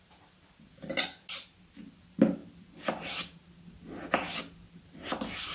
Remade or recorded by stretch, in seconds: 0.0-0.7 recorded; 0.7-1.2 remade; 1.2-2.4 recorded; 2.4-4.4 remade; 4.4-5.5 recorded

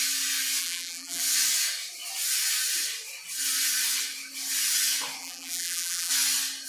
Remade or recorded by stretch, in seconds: 0.0-0.6 recorded; 0.6-1.2 remade; 1.2-5.2 recorded; 5.2-6.1 remade; 6.1-6.7 recorded

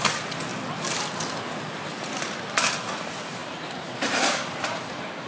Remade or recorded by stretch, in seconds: 0.0-3.4 recorded; 3.4-5.3 remade